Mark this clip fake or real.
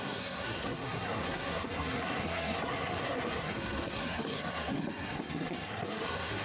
fake